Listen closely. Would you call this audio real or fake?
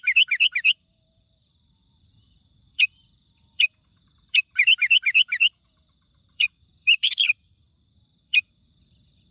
fake